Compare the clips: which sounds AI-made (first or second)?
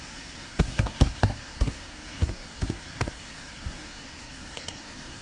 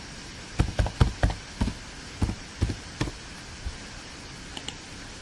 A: first